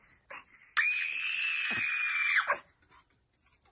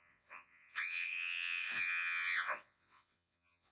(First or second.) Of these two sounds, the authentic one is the first